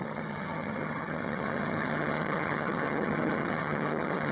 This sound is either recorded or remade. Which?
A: remade